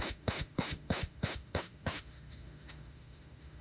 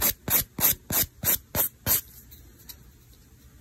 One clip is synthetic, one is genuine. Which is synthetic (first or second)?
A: first